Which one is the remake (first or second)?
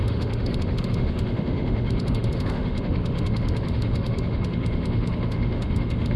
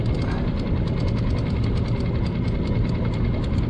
first